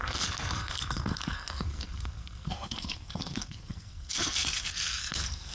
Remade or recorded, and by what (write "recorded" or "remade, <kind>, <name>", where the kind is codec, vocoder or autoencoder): remade, codec, SNAC